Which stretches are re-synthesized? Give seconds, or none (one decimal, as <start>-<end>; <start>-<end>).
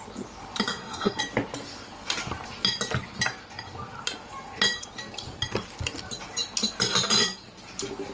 0.7-1.2